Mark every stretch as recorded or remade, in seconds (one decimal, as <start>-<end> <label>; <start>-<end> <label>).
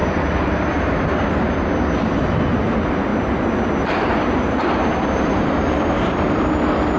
0.0-1.4 remade; 1.4-3.1 recorded; 3.1-6.5 remade; 6.5-7.0 recorded